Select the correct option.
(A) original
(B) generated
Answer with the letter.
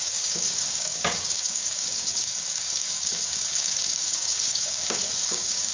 B